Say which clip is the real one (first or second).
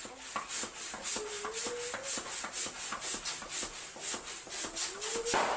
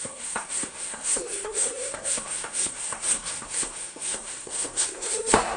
first